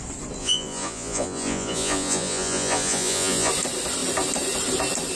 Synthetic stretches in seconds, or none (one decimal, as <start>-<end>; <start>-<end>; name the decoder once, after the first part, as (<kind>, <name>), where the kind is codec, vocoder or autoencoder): 0.4-3.5 (vocoder, Vocos)